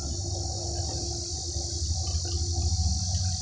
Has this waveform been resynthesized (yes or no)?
no